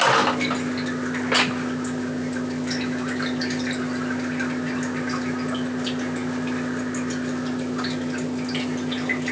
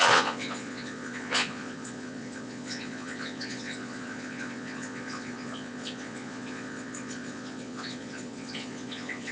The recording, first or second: first